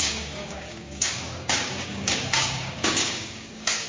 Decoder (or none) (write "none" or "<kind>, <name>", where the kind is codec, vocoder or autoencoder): codec, DAC